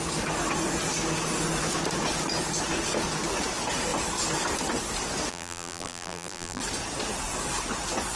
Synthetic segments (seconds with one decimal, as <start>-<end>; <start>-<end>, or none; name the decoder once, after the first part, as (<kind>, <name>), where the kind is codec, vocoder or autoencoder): 5.3-6.6 (vocoder, BigVGAN v2)